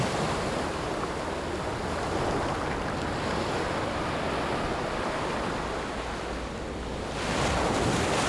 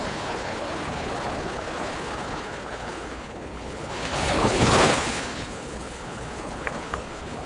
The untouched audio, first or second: first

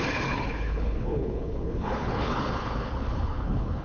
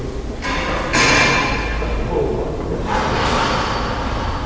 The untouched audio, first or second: second